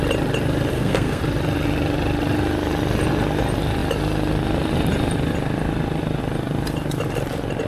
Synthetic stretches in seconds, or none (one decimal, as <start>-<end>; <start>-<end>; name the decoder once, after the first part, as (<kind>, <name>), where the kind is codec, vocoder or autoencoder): 0.7-1.2 (codec, SNAC)